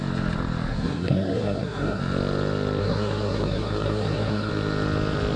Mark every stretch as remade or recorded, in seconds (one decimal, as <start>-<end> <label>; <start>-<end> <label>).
0.0-0.7 recorded; 0.7-2.0 remade; 2.0-2.8 recorded; 2.8-4.5 remade; 4.5-5.4 recorded